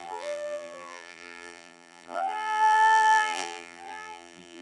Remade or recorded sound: remade